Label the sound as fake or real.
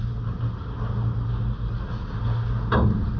real